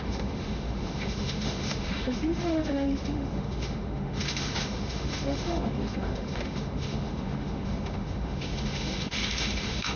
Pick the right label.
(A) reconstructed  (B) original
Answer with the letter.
A